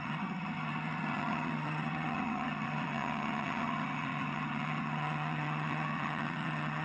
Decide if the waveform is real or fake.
fake